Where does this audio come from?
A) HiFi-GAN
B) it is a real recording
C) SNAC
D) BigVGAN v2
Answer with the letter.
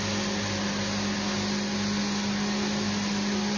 B